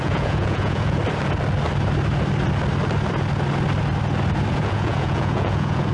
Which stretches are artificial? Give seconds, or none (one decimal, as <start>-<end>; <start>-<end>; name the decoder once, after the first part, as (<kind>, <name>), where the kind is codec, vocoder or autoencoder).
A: 0.0-1.0 (vocoder, Vocos); 4.5-5.9